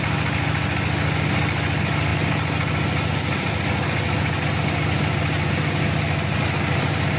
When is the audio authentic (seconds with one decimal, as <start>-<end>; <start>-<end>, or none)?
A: 0.0-7.2